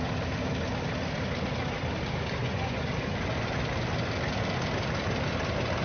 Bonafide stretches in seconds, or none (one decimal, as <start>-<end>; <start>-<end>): 0.0-2.4; 2.9-5.8